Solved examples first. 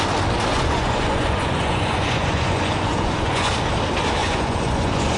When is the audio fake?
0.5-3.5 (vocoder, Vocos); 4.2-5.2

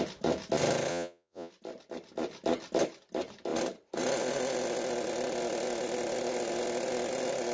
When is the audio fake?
0.9-1.5 (vocoder, Vocos)

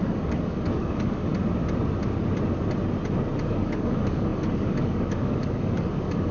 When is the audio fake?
0.0-1.3 (codec, DAC); 3.5-6.3

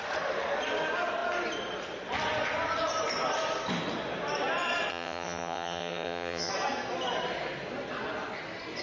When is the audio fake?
4.9-6.5 (vocoder, HiFi-GAN)